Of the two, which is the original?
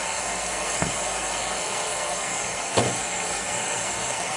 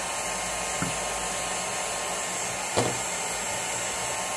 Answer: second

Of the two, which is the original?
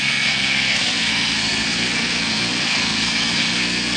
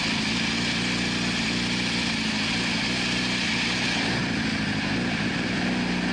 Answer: second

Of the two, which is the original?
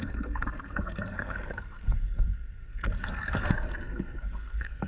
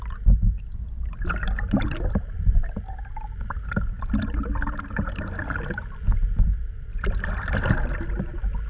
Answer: second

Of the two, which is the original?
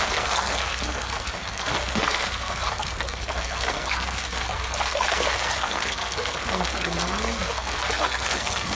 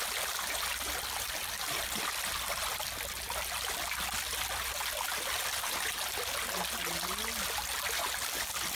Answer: second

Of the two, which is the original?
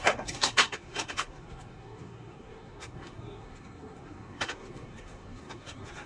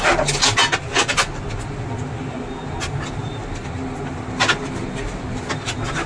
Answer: second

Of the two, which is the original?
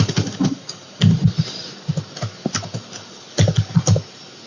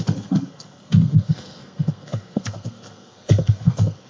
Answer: first